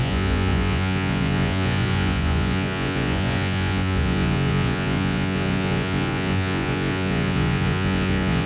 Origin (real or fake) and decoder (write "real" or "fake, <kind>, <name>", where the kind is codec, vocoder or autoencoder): fake, vocoder, Vocos